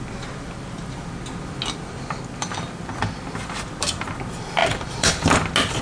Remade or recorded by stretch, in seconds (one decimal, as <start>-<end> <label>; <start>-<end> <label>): 0.0-4.6 recorded; 4.6-5.1 remade; 5.1-5.8 recorded